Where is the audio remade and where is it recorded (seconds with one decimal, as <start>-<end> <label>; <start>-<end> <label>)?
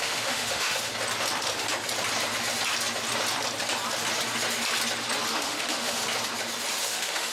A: 0.0-0.9 remade; 0.9-5.3 recorded; 5.3-6.0 remade; 6.0-6.8 recorded; 6.8-7.3 remade